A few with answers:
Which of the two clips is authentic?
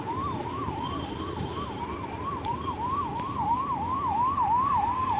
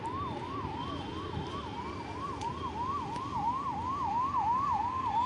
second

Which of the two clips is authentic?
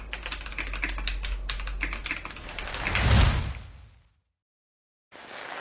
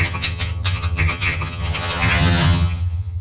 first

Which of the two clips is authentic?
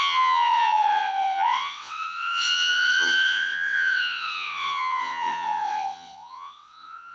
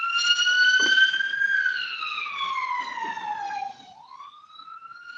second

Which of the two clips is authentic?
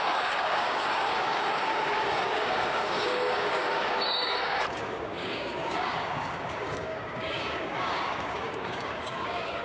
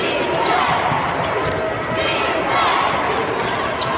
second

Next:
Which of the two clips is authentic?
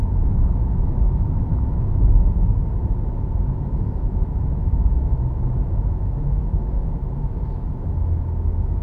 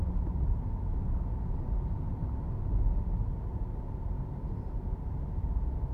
second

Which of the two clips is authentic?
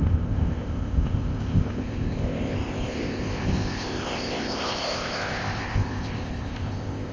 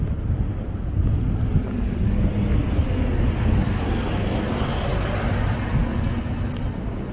second